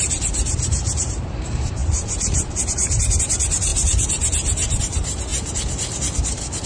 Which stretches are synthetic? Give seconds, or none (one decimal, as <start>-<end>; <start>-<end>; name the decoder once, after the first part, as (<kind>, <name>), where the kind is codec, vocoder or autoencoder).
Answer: 0.0-5.3 (vocoder, BigVGAN v2); 6.2-6.7